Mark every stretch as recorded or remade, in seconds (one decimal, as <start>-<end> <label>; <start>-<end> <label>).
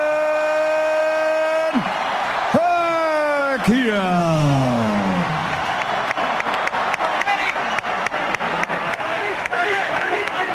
0.0-4.2 recorded; 4.2-5.8 remade; 5.8-8.9 recorded; 8.9-10.5 remade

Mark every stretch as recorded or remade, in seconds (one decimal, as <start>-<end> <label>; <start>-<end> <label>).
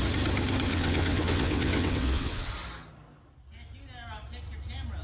0.0-0.7 recorded; 0.7-2.5 remade; 2.5-5.0 recorded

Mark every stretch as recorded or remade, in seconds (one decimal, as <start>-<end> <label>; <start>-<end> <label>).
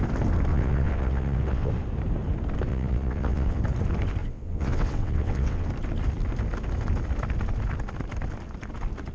0.0-0.5 recorded; 0.5-1.7 remade; 1.7-2.7 recorded; 2.7-3.6 remade; 3.6-4.2 recorded; 4.2-5.7 remade; 5.7-9.1 recorded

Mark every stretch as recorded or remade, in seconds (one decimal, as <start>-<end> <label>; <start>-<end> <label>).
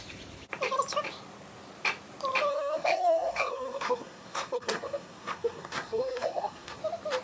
0.0-2.5 recorded; 2.5-6.8 remade; 6.8-7.2 recorded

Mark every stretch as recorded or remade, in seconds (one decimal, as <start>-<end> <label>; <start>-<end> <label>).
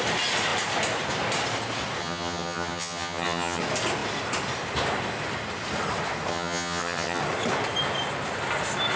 0.0-2.0 recorded; 2.0-3.6 remade; 3.6-6.3 recorded; 6.3-7.2 remade; 7.2-9.0 recorded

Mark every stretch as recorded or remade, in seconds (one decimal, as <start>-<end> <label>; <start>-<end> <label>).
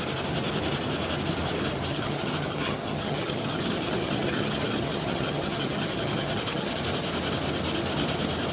0.0-1.9 recorded; 1.9-6.8 remade; 6.8-8.5 recorded